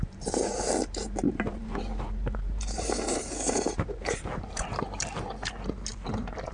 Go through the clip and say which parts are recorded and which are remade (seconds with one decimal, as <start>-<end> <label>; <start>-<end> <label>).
0.0-6.5 remade